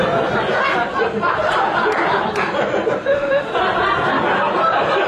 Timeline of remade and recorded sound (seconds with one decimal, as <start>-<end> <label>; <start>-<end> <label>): 0.0-3.1 recorded; 3.1-3.5 remade; 3.5-5.1 recorded